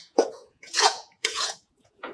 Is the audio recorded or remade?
remade